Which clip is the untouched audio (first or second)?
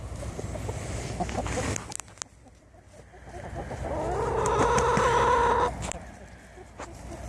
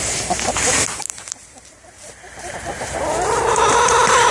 first